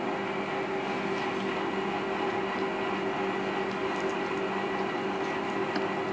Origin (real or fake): real